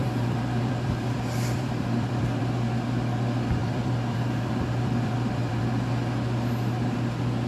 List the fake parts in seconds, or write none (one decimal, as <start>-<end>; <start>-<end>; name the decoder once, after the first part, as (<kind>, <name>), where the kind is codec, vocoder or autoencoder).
0.0-2.4 (vocoder, BigVGAN v2); 3.6-5.6